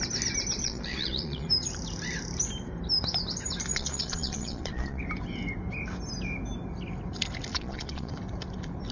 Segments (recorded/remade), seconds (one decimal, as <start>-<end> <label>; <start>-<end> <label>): 0.0-0.6 recorded; 0.6-1.5 remade; 1.5-3.7 recorded; 3.7-5.0 remade; 5.0-7.5 recorded; 7.5-8.1 remade; 8.1-8.9 recorded

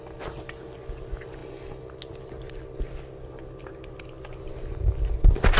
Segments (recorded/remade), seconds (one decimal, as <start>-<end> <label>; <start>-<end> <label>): 0.0-5.6 recorded